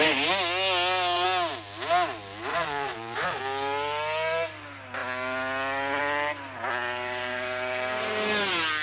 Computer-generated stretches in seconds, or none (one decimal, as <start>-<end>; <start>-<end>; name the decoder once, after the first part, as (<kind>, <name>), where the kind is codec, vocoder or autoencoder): 2.5-3.4 (vocoder, Vocos)

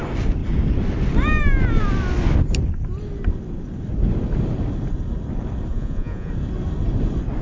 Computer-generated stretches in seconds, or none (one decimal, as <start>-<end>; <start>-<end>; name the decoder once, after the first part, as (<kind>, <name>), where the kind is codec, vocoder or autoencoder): 5.7-6.3 (vocoder, Vocos)

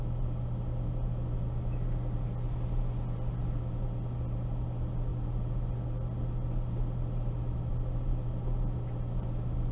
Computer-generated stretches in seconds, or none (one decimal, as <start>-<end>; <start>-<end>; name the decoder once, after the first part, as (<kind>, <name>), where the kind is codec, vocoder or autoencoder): none

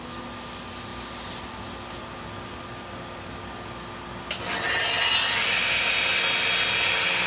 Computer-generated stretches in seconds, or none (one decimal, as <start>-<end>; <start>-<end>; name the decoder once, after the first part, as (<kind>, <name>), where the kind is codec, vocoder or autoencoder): none

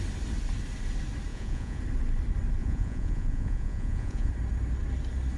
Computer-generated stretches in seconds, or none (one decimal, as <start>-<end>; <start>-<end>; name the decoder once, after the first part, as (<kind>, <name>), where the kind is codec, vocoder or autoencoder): 1.3-1.8 (vocoder, Vocos); 2.6-4.3